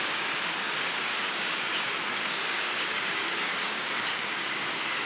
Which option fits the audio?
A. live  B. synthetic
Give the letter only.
B